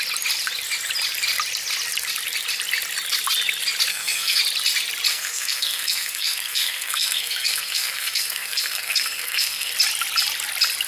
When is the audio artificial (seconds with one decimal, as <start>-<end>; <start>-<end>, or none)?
3.9-4.4; 5.1-9.7